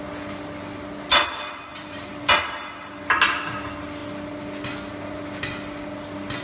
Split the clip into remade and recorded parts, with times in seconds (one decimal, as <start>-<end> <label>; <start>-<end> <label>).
0.0-1.7 recorded; 1.7-2.5 remade; 2.5-6.4 recorded